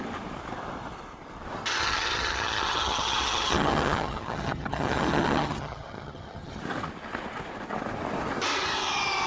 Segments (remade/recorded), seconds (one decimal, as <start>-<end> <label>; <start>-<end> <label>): 0.0-1.8 recorded; 1.8-6.6 remade; 6.6-9.3 recorded